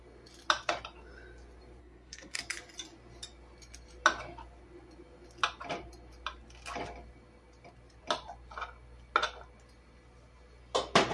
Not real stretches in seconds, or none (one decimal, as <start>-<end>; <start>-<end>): 1.8-2.4